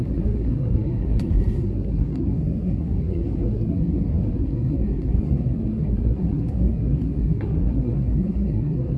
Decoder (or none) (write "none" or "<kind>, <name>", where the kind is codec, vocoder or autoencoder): codec, SNAC